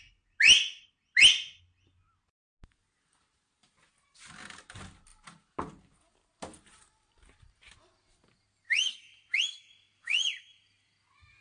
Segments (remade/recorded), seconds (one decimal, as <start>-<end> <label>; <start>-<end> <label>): 0.0-11.4 recorded